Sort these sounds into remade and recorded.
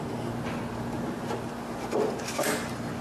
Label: recorded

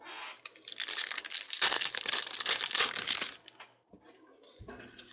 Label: recorded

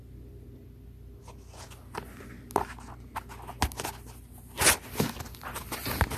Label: recorded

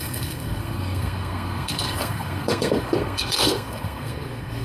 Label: remade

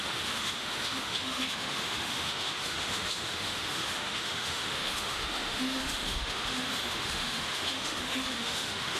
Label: remade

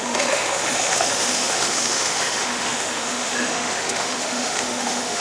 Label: remade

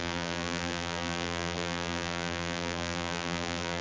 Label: remade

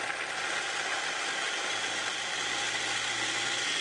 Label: recorded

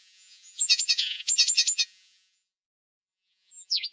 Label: remade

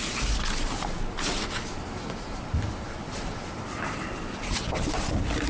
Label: recorded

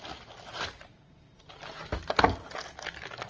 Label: recorded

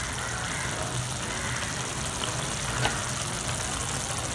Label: recorded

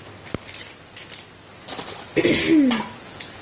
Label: recorded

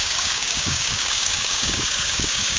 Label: remade